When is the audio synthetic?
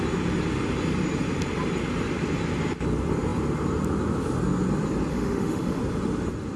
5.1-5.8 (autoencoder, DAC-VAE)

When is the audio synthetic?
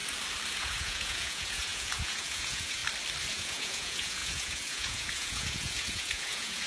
0.5-2.8 (vocoder, Vocos); 3.3-6.7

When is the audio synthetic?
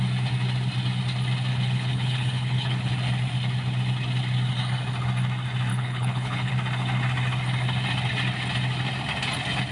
1.5-2.9 (codec, HILCodec); 5.7-6.5